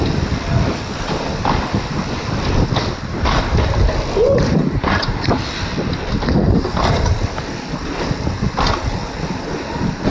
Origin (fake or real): real